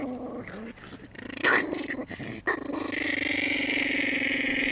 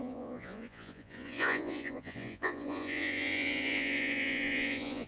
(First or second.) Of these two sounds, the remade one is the second